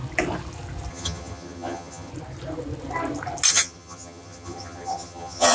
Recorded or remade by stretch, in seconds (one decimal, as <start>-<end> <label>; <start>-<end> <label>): 0.0-0.9 recorded; 0.9-2.1 remade; 2.1-3.5 recorded; 3.5-5.5 remade